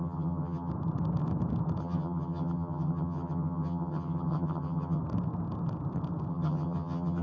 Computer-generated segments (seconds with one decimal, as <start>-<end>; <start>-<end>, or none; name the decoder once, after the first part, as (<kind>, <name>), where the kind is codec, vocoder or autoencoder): 0.0-0.7 (vocoder, HiFi-GAN); 1.8-5.0; 6.3-7.2